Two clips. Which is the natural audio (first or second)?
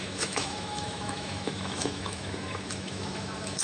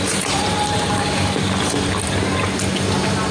second